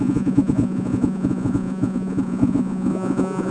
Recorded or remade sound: remade